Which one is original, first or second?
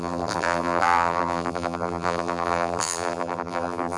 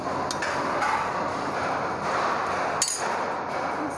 second